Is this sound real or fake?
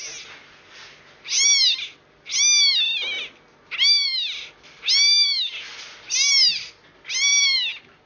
real